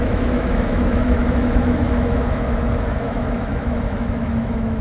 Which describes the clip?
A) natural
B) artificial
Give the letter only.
B